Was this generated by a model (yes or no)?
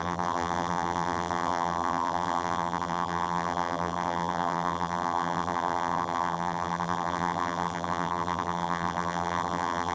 yes